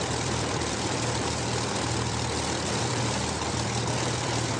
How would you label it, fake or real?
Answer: fake